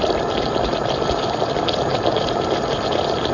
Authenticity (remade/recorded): recorded